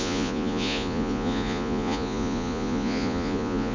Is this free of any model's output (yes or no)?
no